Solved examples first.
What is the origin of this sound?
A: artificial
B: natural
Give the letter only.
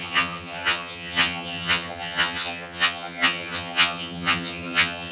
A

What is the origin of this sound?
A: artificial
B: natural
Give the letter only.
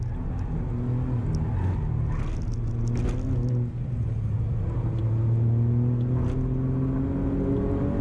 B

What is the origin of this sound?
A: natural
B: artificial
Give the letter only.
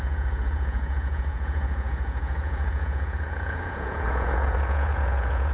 B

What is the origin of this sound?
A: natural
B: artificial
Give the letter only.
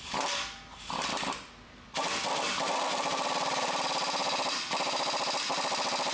B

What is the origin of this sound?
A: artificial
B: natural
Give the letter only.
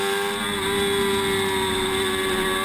B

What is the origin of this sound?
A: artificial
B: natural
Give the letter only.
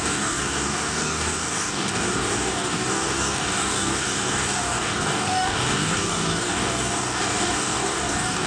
A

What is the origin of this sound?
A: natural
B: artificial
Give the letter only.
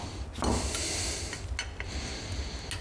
A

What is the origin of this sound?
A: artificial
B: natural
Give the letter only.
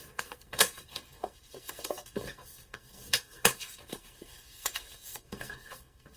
A